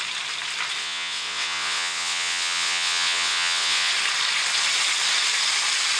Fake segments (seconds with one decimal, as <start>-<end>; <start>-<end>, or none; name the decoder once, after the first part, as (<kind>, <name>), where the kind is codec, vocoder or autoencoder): 0.8-3.9 (vocoder, WaveNeXt)